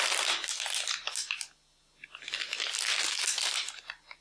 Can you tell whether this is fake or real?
real